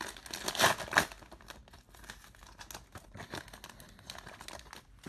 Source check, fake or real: real